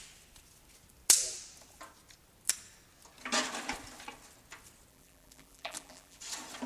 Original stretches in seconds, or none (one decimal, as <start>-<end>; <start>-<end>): 0.0-4.9; 6.2-6.7